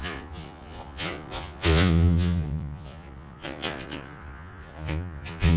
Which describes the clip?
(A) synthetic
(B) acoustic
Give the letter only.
A